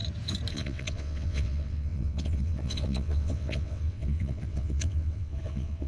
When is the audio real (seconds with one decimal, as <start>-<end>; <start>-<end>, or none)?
0.0-0.5